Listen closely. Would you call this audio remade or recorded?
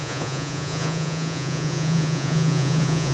remade